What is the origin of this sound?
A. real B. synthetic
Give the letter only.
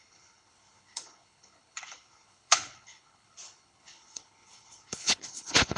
B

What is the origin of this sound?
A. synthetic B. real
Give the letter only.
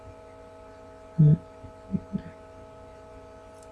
B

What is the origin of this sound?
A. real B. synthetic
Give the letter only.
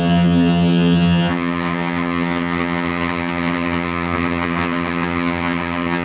B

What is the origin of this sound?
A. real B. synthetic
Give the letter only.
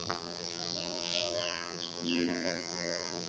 B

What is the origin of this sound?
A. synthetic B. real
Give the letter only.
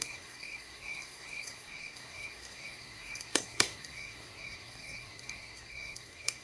A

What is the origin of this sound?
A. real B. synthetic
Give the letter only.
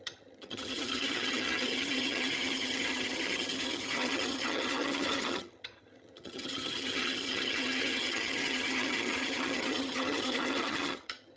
B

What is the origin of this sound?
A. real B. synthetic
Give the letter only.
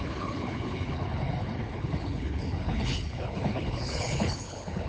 B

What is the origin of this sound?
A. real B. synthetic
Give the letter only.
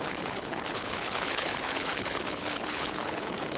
B